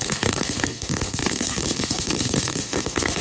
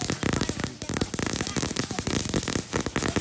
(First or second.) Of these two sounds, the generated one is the first